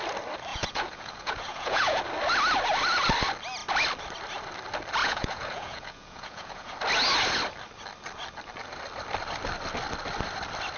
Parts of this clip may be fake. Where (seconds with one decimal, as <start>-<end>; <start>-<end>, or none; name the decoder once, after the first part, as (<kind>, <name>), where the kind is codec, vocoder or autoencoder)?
0.5-2.0 (vocoder, Vocos); 5.0-6.7